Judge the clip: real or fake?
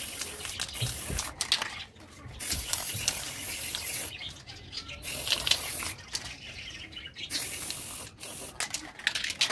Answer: real